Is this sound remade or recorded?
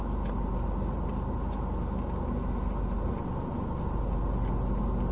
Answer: recorded